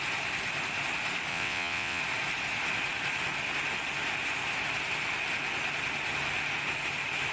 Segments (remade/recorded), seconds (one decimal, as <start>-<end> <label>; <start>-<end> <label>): 0.0-1.3 recorded; 1.3-2.0 remade; 2.0-7.3 recorded